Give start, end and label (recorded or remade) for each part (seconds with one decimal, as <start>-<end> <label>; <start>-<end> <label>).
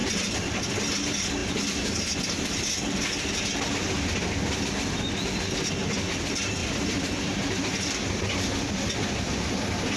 0.0-0.6 remade; 0.6-6.6 recorded; 6.6-7.9 remade; 7.9-10.0 recorded